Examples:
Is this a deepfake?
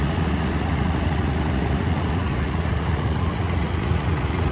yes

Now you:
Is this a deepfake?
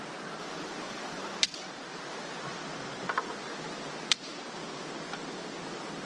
no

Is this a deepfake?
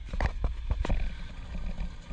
no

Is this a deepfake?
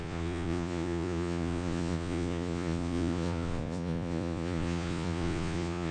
yes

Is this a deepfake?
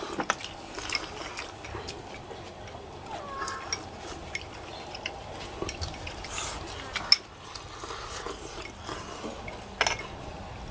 no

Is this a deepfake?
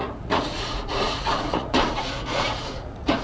yes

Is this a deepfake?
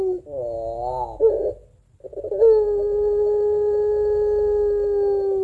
no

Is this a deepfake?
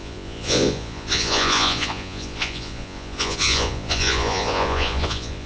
yes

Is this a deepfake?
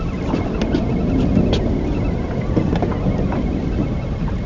no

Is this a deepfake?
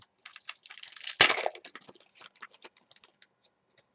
no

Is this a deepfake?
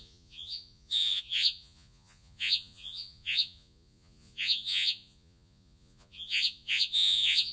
yes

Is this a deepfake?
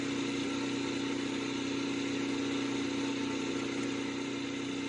no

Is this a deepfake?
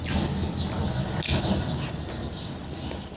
no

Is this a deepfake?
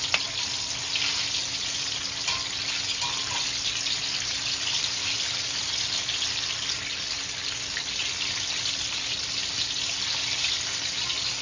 no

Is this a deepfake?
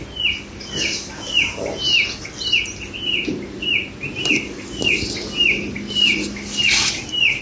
no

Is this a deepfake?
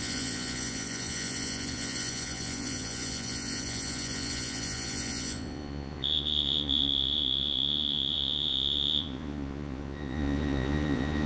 yes